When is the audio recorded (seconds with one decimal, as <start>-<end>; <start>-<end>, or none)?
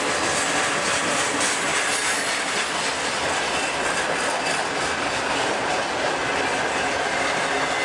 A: 0.0-7.8